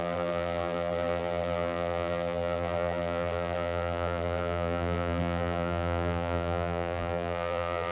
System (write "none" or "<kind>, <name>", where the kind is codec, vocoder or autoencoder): vocoder, BigVGAN v2